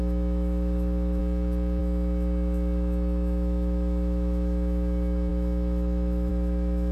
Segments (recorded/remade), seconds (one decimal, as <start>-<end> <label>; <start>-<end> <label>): 0.0-1.2 remade; 1.2-1.8 recorded; 1.8-6.9 remade